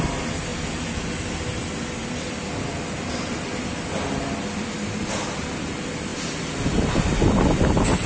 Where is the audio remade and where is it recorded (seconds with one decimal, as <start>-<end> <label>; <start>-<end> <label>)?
0.0-8.1 recorded